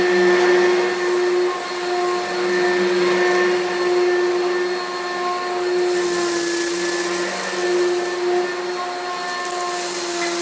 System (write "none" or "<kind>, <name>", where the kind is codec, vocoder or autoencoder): none